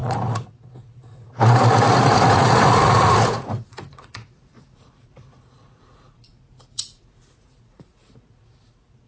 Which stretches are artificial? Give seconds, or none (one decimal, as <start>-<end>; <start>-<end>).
0.0-9.1